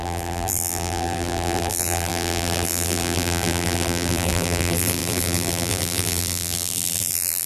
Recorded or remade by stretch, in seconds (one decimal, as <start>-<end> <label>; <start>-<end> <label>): 0.0-7.5 remade